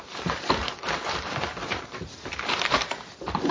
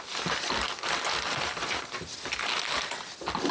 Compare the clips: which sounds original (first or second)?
second